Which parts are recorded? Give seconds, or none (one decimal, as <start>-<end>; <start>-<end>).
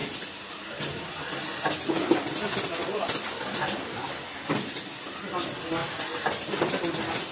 0.5-2.8; 4.4-5.8; 6.5-7.3